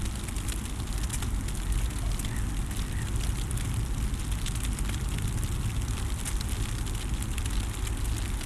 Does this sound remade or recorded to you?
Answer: recorded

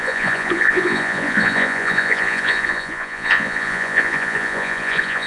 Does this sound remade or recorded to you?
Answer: remade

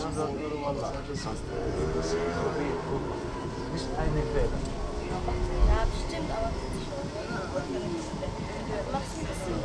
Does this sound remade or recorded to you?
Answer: recorded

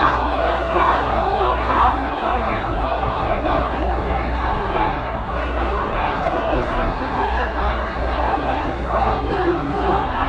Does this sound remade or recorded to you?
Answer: remade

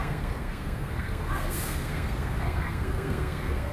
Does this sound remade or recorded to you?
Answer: remade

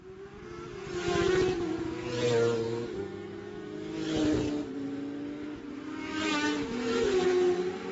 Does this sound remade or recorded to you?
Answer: recorded